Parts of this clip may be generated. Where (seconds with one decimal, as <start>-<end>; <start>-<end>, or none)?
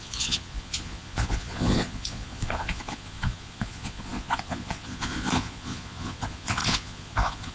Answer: 0.0-7.5